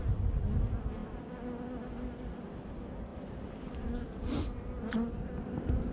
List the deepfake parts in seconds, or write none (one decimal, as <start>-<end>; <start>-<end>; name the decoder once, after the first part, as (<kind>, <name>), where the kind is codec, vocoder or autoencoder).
3.1-3.9 (vocoder, BigVGAN v2)